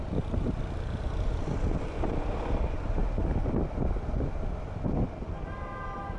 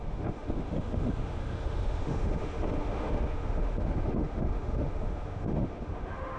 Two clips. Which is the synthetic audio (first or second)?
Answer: second